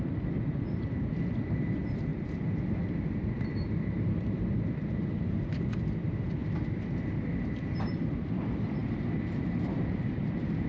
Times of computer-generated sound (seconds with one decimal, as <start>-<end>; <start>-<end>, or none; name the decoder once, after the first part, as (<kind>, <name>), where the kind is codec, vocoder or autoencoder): 0.0-8.8 (vocoder, BigVGAN v2); 9.4-10.7